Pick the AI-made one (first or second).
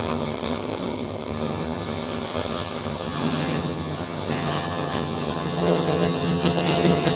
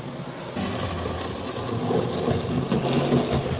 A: first